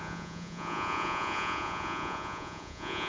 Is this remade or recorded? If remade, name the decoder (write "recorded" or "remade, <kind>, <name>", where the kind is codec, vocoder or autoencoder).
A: remade, vocoder, Vocos